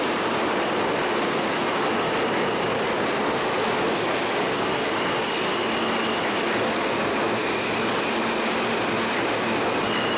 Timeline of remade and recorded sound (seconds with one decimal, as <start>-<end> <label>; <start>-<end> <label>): 0.0-10.2 recorded